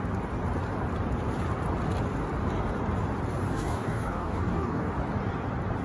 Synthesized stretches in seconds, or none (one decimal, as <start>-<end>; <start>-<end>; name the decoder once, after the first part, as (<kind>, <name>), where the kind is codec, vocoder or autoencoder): 3.5-4.9 (codec, DAC)